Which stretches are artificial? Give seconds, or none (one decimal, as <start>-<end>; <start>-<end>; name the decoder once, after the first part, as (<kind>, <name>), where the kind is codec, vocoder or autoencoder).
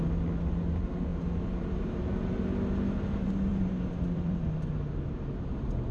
1.1-2.4 (vocoder, BigVGAN v2); 3.5-4.5